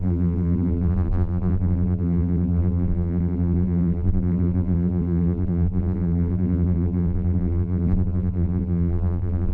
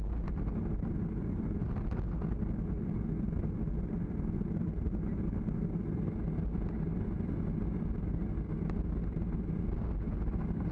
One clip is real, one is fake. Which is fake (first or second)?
first